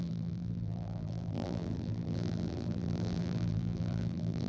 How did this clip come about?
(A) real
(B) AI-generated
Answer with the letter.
B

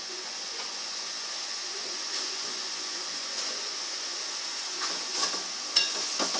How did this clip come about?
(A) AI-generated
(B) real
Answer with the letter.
A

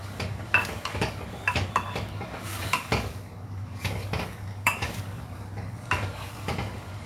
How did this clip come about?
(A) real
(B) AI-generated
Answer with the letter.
B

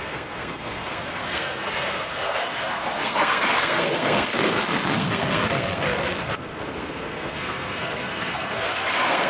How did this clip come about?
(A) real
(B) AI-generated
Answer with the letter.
B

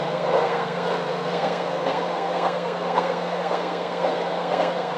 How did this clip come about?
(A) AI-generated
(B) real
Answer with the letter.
A